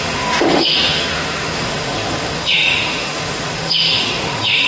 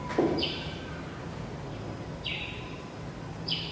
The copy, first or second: first